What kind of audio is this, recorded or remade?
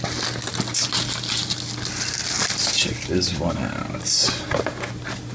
recorded